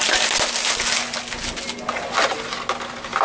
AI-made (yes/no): no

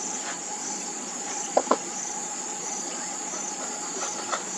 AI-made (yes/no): yes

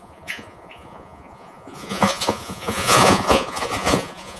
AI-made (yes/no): yes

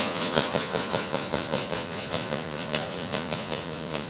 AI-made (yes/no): yes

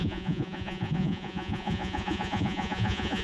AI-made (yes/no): yes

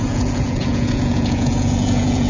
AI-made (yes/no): yes